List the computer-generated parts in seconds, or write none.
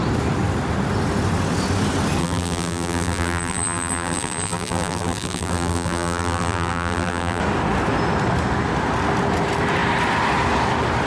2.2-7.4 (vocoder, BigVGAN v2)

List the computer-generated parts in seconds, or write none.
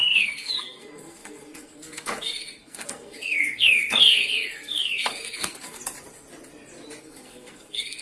0.0-5.8 (codec, SNAC); 7.0-8.0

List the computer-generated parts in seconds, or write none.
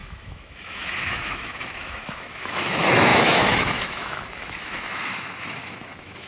0.0-6.3 (autoencoder, DAC-VAE)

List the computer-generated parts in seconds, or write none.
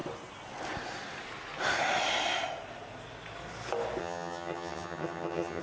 4.0-5.6 (vocoder, HiFi-GAN)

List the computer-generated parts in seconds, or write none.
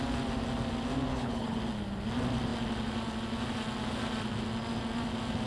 1.1-1.6 (codec, HILCodec)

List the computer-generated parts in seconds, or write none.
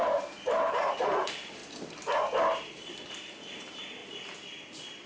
0.0-1.6 (vocoder, BigVGAN v2); 3.6-4.0